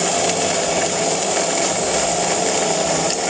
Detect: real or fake real